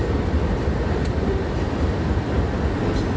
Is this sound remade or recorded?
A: recorded